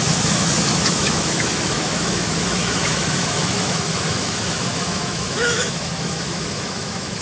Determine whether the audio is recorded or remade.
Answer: remade